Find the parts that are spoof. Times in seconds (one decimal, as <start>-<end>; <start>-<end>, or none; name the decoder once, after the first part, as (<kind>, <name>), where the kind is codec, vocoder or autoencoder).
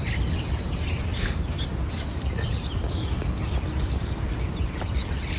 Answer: none